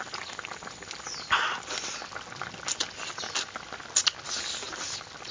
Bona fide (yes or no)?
yes